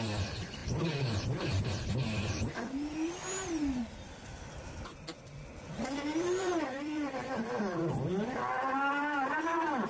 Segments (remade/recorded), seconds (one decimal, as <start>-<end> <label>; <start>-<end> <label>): 0.0-6.1 recorded; 6.1-7.8 remade; 7.8-9.9 recorded